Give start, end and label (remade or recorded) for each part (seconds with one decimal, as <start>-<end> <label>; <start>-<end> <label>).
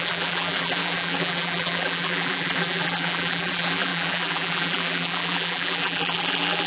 0.0-6.7 remade